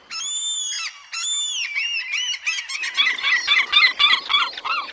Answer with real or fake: real